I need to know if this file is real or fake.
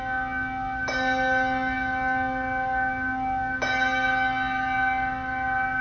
real